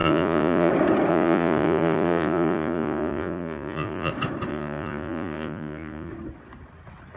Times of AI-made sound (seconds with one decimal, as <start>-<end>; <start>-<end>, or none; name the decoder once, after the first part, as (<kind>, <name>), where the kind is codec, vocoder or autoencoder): 0.0-0.7 (vocoder, Vocos); 1.1-4.1; 4.5-6.1